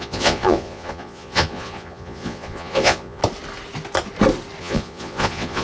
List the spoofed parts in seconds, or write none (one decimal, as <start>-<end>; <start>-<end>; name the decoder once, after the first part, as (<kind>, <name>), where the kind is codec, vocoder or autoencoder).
0.0-3.2 (vocoder, Vocos); 4.6-5.6